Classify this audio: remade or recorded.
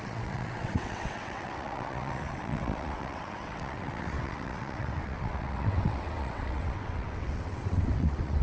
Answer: remade